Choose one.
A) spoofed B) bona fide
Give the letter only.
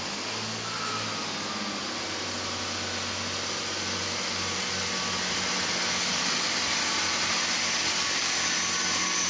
B